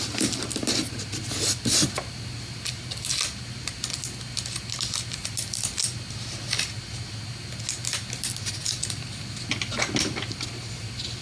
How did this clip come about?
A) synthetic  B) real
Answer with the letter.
B